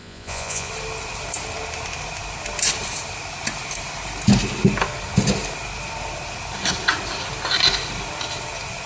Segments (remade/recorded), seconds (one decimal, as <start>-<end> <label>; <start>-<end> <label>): 0.0-0.7 remade; 0.7-8.9 recorded